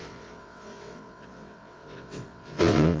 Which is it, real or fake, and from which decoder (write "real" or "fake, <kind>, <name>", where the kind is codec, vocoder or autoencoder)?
fake, vocoder, WaveNeXt